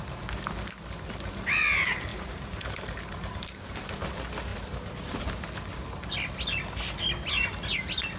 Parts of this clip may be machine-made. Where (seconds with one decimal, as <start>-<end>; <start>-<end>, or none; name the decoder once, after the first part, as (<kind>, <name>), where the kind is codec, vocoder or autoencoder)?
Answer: 2.1-3.9 (vocoder, BigVGAN v2)